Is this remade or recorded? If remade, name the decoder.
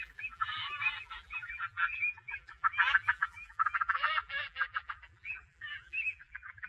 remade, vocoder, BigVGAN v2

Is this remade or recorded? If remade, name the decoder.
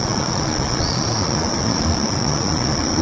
remade, vocoder, Vocos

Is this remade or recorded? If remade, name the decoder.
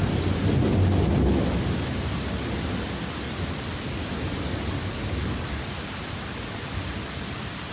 recorded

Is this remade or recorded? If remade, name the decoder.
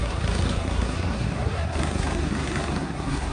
remade, codec, SNAC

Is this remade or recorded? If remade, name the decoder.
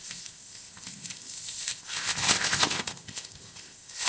remade, codec, ZipCodec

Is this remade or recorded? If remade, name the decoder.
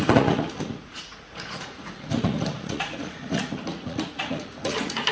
remade, vocoder, Vocos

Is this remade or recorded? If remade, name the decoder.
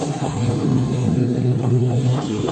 remade, codec, SNAC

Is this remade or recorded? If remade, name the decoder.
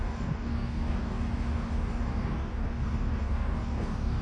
remade, codec, DAC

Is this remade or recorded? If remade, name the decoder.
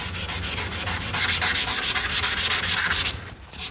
recorded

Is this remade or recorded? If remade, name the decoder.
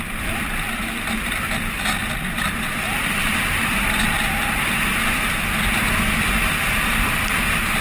remade, vocoder, BigVGAN v2